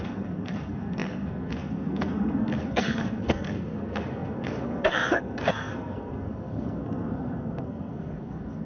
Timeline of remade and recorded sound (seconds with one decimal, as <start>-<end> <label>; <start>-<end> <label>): 0.0-8.7 remade